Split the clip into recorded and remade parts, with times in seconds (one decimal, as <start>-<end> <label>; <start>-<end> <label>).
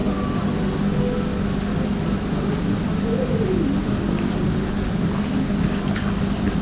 0.0-6.6 recorded